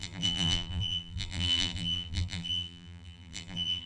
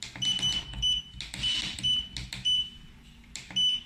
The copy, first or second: first